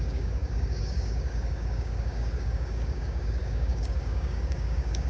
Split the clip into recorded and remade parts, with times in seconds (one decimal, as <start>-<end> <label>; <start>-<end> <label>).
0.0-5.1 remade

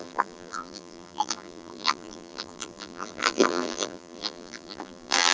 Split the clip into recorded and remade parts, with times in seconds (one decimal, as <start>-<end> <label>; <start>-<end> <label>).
0.0-5.3 remade

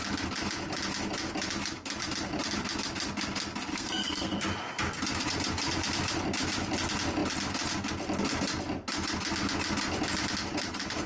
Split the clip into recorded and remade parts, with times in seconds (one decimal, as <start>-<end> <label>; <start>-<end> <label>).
0.0-3.7 recorded; 3.7-4.4 remade; 4.4-11.1 recorded

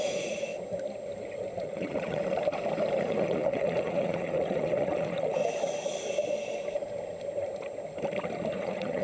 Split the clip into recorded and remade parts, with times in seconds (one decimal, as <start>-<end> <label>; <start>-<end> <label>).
0.0-0.5 remade; 0.5-1.5 recorded; 1.5-2.2 remade; 2.2-3.0 recorded; 3.0-5.4 remade; 5.4-8.5 recorded; 8.5-9.0 remade

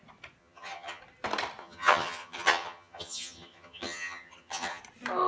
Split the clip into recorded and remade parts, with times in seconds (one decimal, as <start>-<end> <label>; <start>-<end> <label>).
0.0-0.4 recorded; 0.4-1.0 remade; 1.0-1.6 recorded; 1.6-4.8 remade; 4.8-5.3 recorded

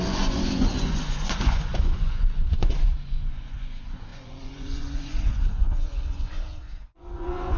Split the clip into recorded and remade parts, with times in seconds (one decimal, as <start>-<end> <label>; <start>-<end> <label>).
0.0-7.6 remade

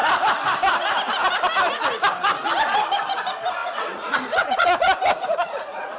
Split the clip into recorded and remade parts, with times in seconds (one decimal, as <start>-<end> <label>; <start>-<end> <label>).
0.0-3.6 recorded; 3.6-6.0 remade